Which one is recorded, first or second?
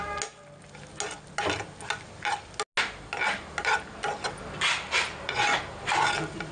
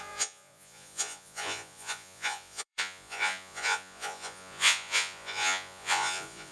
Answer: first